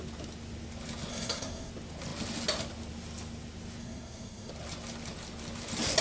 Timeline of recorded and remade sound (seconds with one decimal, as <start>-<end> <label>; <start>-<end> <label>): 0.0-1.1 recorded; 1.1-1.7 remade; 1.7-3.8 recorded; 3.8-4.5 remade; 4.5-6.0 recorded